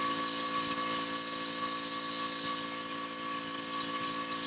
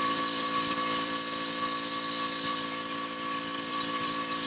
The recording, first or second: first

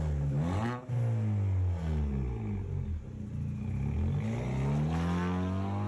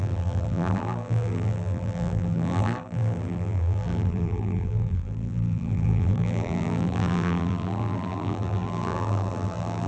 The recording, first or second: first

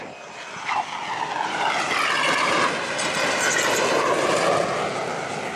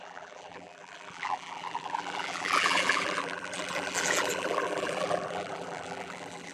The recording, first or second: first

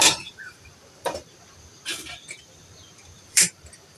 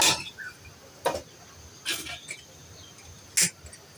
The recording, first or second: second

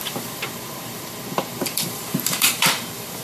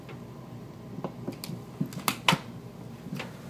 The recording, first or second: second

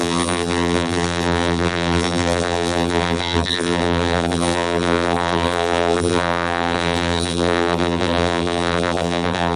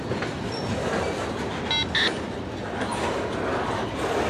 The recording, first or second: second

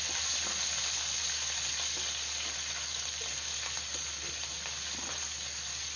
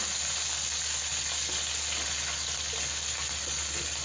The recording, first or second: second